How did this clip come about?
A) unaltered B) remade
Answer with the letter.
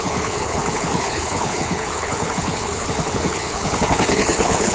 B